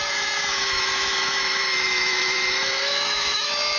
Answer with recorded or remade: remade